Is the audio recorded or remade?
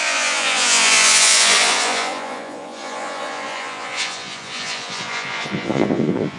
remade